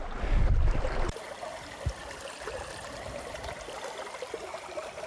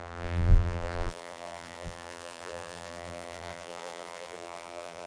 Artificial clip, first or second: second